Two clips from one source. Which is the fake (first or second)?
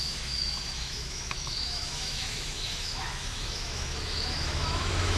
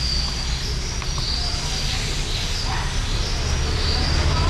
first